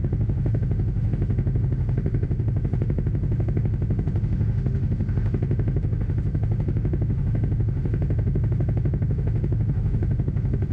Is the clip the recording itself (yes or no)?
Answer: no